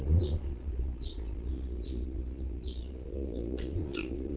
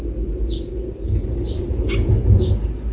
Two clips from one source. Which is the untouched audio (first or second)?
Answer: second